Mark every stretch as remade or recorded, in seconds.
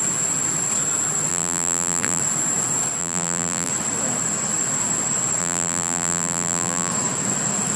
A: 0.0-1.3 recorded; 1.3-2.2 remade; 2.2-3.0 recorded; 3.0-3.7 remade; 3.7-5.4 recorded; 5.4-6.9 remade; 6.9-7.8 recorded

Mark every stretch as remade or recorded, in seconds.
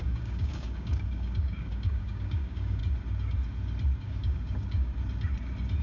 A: 0.0-2.8 remade; 2.8-4.0 recorded; 4.0-4.9 remade; 4.9-5.8 recorded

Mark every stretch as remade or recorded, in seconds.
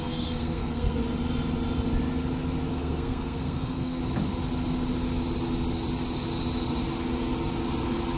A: 0.0-1.0 remade; 1.0-2.7 recorded; 2.7-4.0 remade; 4.0-8.2 recorded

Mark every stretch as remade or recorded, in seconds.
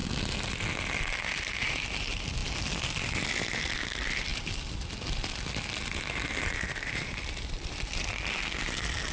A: 0.0-2.4 recorded; 2.4-3.0 remade; 3.0-4.3 recorded; 4.3-8.6 remade; 8.6-9.1 recorded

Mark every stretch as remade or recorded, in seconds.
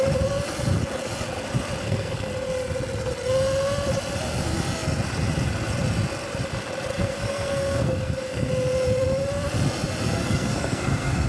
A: 0.0-1.8 recorded; 1.8-2.3 remade; 2.3-6.9 recorded; 6.9-8.5 remade; 8.5-10.2 recorded; 10.2-11.3 remade